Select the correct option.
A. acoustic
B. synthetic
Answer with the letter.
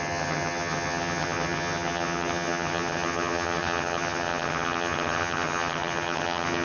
B